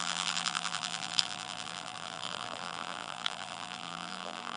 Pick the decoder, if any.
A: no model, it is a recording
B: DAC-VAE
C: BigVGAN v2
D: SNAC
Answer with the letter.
C